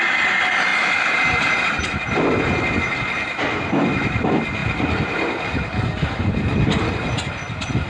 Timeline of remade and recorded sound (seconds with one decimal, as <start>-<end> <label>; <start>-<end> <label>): 0.0-7.9 recorded